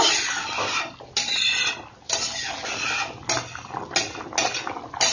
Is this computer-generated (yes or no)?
no